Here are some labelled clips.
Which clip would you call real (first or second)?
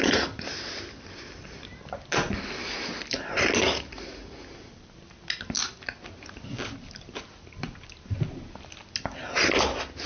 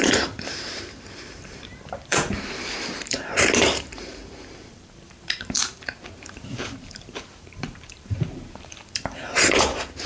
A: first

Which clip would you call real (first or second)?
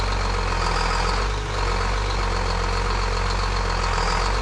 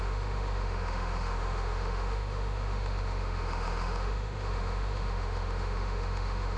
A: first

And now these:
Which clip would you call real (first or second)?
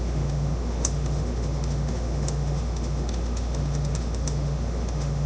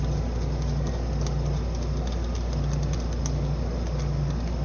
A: second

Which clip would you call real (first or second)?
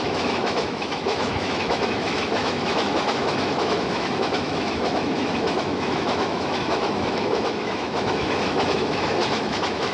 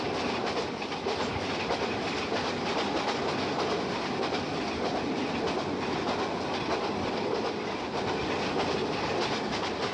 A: second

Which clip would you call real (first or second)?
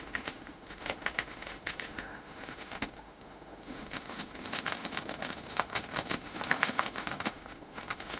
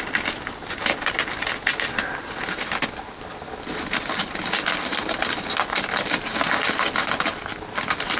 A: second